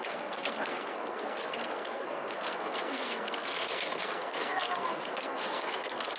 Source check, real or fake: fake